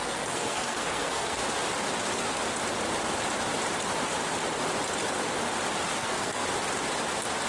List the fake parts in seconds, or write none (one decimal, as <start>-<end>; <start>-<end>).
0.0-1.4; 5.9-6.4